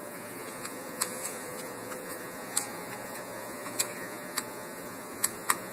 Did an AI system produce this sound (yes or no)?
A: yes